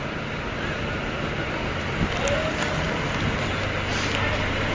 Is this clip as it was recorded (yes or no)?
yes